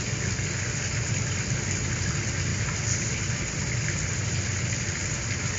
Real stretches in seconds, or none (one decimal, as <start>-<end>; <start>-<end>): 0.0-5.6